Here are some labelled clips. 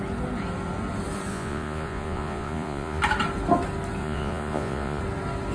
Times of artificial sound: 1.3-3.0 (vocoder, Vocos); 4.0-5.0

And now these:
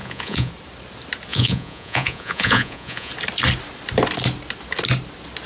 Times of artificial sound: 0.0-0.5 (vocoder, Vocos); 1.3-3.1

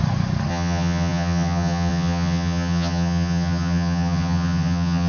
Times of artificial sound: 0.5-5.1 (vocoder, HiFi-GAN)

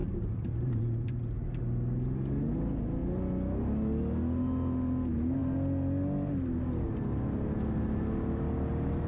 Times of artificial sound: 0.0-1.6 (vocoder, BigVGAN v2)

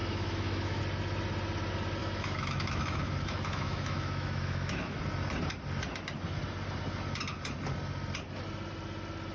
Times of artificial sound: 0.0-0.8 (autoencoder, DAC-VAE); 2.0-5.0

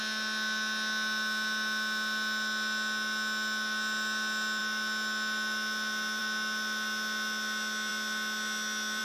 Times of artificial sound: none

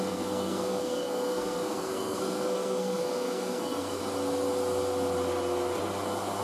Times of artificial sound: 0.0-4.0 (codec, SNAC)